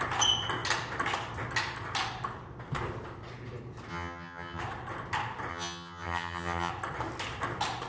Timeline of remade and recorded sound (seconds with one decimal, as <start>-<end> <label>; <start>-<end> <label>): 0.0-3.9 recorded; 3.9-4.6 remade; 4.6-5.5 recorded; 5.5-6.7 remade; 6.7-7.9 recorded